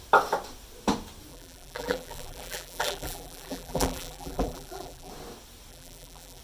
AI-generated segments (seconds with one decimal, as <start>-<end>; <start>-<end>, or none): 1.3-5.1; 5.7-6.4